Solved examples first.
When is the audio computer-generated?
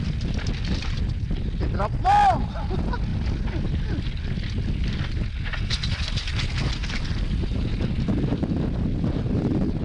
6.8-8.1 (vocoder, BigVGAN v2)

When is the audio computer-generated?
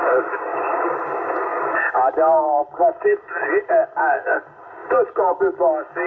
0.5-1.0 (vocoder, BigVGAN v2); 4.8-5.4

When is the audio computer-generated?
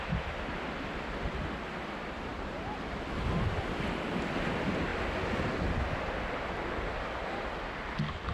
2.3-3.0 (vocoder, BigVGAN v2)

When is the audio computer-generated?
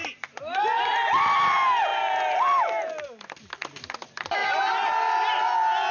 0.0-0.9 (vocoder, BigVGAN v2)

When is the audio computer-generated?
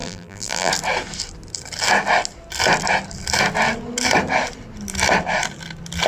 0.0-0.7 (vocoder, BigVGAN v2)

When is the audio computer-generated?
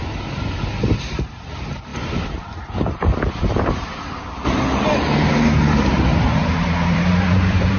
1.0-7.8 (vocoder, BigVGAN v2)